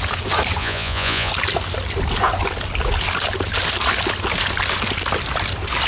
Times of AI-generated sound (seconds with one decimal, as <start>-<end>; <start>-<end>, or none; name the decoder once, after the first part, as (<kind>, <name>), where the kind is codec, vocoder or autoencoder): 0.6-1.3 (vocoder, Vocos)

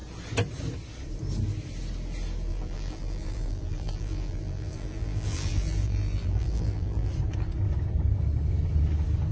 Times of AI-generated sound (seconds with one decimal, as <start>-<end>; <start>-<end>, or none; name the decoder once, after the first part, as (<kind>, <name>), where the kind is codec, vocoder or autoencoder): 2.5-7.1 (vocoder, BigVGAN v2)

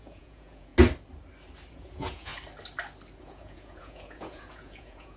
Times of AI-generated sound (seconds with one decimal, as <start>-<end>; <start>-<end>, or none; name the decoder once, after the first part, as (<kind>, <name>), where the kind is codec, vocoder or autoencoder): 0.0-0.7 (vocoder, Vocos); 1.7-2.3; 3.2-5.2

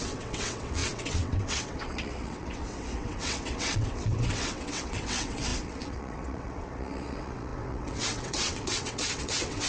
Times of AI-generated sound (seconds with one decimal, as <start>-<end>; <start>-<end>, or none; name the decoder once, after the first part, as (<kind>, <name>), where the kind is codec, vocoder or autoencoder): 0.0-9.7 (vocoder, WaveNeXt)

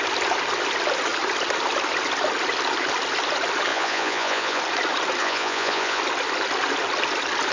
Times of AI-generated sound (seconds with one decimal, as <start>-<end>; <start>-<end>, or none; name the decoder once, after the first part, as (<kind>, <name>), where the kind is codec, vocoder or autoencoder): 3.7-4.6 (vocoder, Vocos); 5.2-6.0

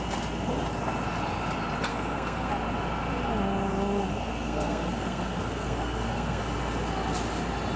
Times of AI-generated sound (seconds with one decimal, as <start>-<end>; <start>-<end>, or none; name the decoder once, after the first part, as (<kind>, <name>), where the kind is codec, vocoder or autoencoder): 1.9-2.5 (codec, SNAC); 4.1-6.4

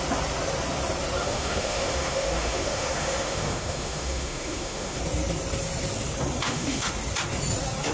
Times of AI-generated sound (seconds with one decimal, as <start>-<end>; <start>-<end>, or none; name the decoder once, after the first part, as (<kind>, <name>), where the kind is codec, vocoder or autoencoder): 1.2-5.0 (autoencoder, DAC-VAE); 6.4-6.9